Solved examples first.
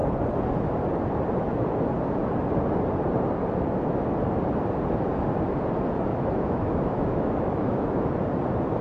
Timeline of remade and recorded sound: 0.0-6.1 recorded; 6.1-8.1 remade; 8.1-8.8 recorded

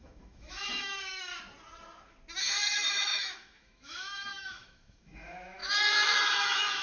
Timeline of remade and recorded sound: 0.0-1.3 remade; 1.3-2.4 recorded; 2.4-6.8 remade

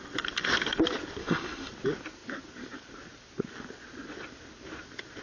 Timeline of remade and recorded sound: 0.0-1.2 recorded; 1.2-1.7 remade; 1.7-5.2 recorded

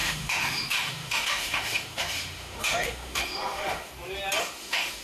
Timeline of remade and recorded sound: 0.0-3.9 remade; 3.9-4.4 recorded; 4.4-5.0 remade

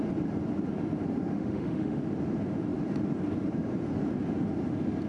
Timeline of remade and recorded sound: 0.0-1.3 recorded; 1.3-2.0 remade; 2.0-5.1 recorded

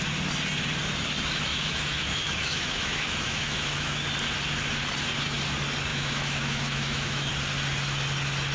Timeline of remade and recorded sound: 0.0-1.5 recorded; 1.5-4.0 remade; 4.0-5.9 recorded; 5.9-7.3 remade; 7.3-8.5 recorded

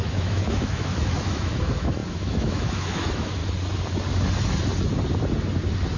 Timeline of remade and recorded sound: 0.0-3.4 remade; 3.4-6.0 recorded